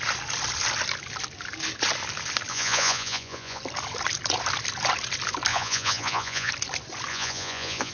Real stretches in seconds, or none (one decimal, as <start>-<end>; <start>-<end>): 0.0-2.5; 3.6-5.5; 6.5-7.1